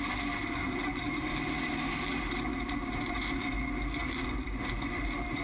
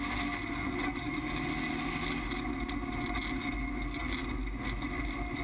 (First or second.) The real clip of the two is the second